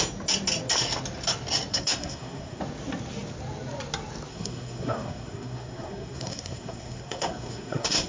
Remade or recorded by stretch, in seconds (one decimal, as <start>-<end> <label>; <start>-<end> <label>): 0.0-1.7 recorded; 1.7-2.6 remade; 2.6-4.3 recorded; 4.3-8.1 remade